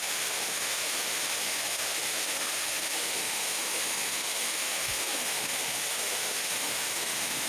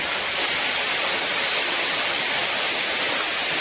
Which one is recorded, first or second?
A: second